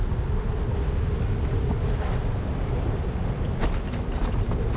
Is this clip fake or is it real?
real